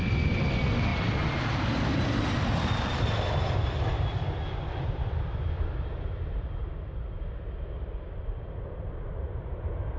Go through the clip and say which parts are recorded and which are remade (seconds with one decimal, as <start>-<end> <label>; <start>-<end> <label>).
0.0-10.0 recorded